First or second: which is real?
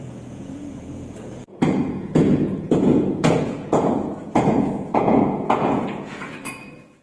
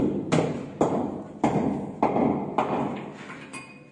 second